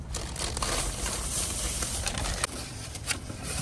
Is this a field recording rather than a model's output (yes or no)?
no